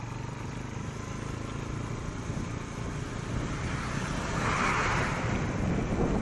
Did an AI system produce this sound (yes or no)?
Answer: no